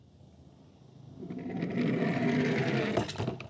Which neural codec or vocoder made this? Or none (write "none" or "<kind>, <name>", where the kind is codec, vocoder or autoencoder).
none